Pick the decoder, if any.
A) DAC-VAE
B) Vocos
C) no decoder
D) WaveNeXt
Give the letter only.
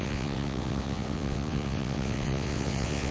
D